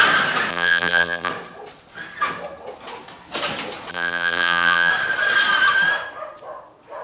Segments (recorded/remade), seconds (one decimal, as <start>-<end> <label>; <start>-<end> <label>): 0.0-0.5 recorded; 0.5-1.3 remade; 1.3-3.9 recorded; 3.9-4.9 remade; 4.9-7.0 recorded